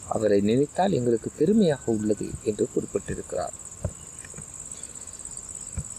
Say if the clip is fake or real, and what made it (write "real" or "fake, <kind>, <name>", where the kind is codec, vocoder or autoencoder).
real